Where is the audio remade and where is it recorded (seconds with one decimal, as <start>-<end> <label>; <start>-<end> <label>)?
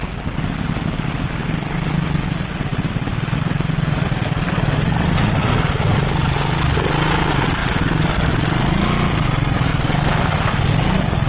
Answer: 0.0-2.7 recorded; 2.7-6.6 remade; 6.6-11.3 recorded